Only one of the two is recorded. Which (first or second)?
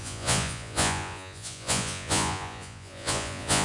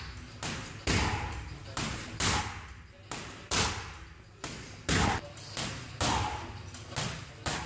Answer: second